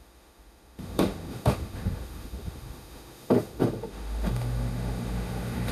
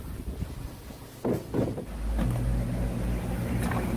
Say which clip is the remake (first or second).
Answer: first